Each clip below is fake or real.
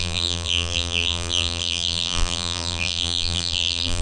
fake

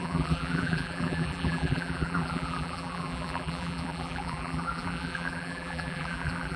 fake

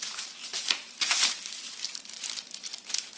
fake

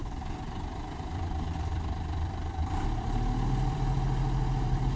fake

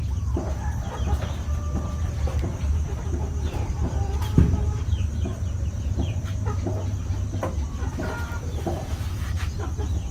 fake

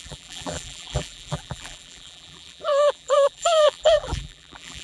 fake